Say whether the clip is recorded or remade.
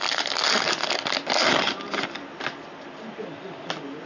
recorded